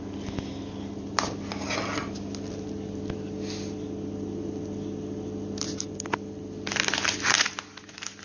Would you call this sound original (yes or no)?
yes